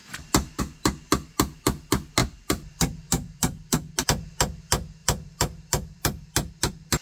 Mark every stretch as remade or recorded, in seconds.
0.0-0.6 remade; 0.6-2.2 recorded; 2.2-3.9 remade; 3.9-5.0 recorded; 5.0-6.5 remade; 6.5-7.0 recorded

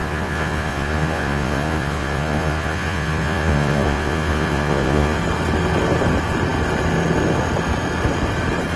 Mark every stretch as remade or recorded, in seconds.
0.0-5.2 remade; 5.2-8.8 recorded

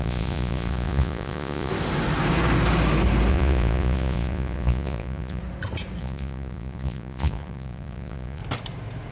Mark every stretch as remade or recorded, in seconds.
0.0-1.7 remade; 1.7-3.3 recorded; 3.3-5.4 remade; 5.4-6.0 recorded; 6.0-8.4 remade; 8.4-9.1 recorded